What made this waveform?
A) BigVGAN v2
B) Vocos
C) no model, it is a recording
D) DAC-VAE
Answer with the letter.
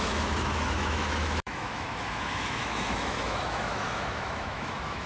D